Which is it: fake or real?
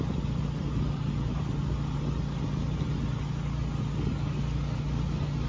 real